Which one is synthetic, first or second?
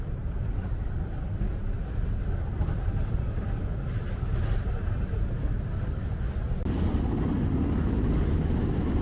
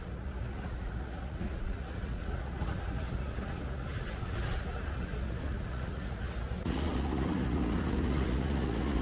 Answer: second